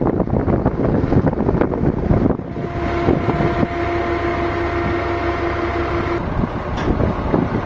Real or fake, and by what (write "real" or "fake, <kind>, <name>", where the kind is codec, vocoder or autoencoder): real